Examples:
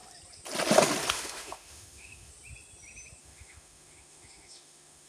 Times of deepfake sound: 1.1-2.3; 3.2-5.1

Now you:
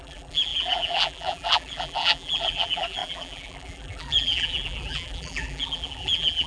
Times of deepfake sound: 0.0-6.5

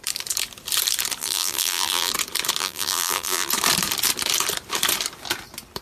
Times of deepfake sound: 1.2-2.1; 2.6-3.5

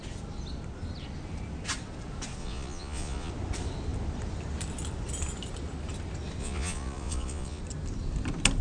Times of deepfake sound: 2.4-3.3; 6.4-7.6

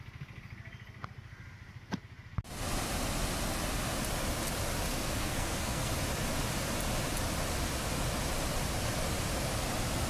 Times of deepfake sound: 4.9-5.9

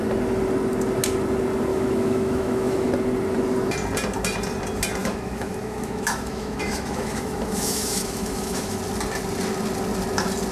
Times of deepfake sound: 1.7-2.9; 5.0-8.8